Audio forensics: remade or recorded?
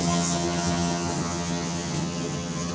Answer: remade